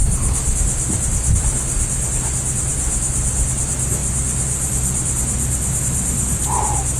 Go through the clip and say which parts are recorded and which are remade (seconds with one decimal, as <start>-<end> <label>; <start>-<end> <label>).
0.0-4.0 recorded; 4.0-5.8 remade; 5.8-7.0 recorded